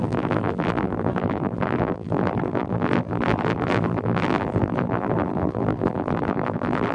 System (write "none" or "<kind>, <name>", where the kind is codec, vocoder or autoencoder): vocoder, BigVGAN v2